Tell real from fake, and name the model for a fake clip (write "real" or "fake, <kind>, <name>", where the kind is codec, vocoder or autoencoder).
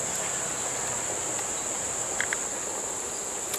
real